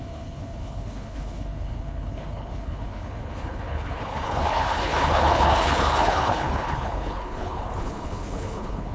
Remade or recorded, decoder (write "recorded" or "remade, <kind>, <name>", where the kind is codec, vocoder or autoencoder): remade, codec, HILCodec